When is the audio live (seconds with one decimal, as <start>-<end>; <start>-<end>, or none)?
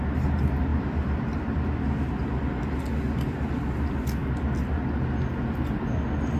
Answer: 0.0-0.7; 1.8-6.4